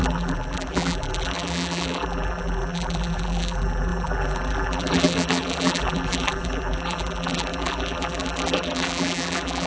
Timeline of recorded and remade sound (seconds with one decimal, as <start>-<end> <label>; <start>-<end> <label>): 0.0-9.7 remade